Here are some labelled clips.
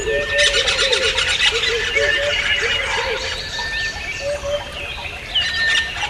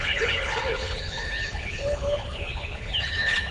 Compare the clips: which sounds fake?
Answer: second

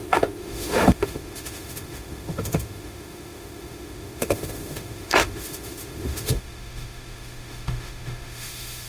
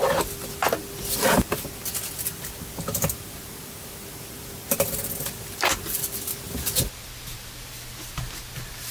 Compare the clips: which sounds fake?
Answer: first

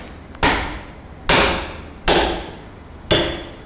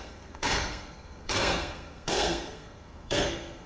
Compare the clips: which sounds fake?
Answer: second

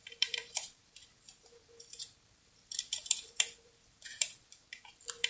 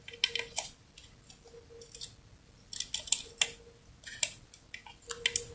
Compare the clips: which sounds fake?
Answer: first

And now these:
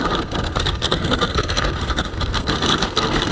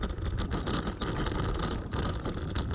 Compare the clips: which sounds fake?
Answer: first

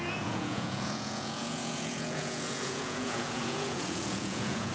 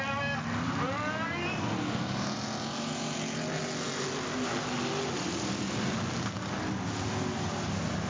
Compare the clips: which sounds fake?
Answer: first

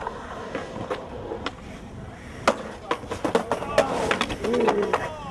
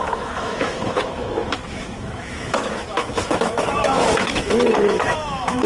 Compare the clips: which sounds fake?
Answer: second